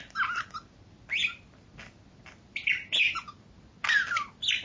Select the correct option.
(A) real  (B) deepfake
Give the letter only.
A